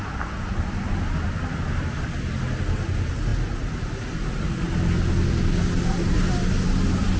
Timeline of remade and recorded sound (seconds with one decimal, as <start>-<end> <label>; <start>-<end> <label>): 0.0-7.2 recorded